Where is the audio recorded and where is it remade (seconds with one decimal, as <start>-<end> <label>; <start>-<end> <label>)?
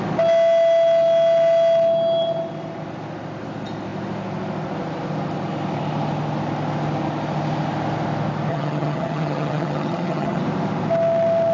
0.0-8.5 recorded; 8.5-10.4 remade; 10.4-11.5 recorded